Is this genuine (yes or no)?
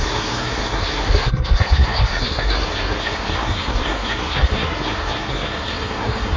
no